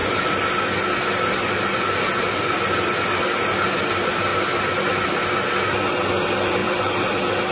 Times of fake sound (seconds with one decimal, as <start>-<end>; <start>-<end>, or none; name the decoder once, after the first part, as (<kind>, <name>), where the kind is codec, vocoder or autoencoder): 0.0-0.6 (vocoder, BigVGAN v2); 4.3-4.9; 6.6-7.5